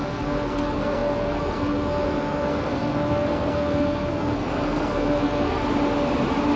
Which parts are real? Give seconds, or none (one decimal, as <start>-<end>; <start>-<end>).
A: 5.6-6.6

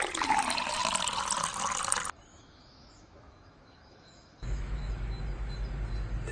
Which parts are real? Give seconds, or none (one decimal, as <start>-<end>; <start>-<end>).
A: 0.0-2.3; 4.9-6.3

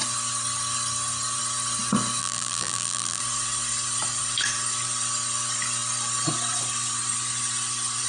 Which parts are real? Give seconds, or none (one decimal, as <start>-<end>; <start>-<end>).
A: 0.0-2.2; 3.2-8.1

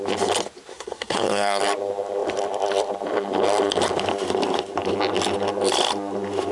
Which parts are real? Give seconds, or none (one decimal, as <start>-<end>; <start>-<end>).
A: 0.0-0.7; 1.6-6.5

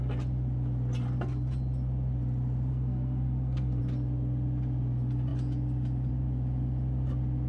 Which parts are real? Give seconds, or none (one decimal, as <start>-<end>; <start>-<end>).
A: 0.0-2.7; 3.8-7.5

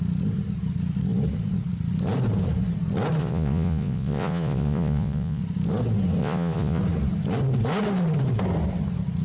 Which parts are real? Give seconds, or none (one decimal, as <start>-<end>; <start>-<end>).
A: 0.0-3.2; 5.4-6.2; 6.8-9.2

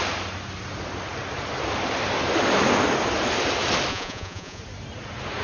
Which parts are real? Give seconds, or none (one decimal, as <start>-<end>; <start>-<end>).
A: 0.0-3.9; 4.6-5.4